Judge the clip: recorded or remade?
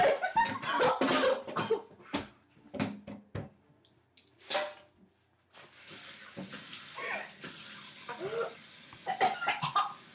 recorded